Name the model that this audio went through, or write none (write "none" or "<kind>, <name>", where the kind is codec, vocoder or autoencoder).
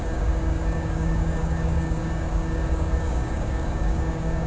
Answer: codec, DAC